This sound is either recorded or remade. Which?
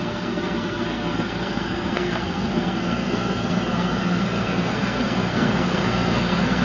remade